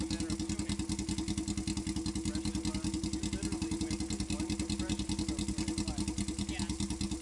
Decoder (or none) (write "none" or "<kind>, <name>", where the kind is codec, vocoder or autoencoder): none